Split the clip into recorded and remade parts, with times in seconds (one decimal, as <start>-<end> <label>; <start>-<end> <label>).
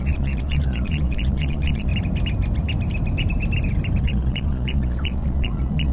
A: 0.0-1.9 remade; 1.9-4.0 recorded; 4.0-5.9 remade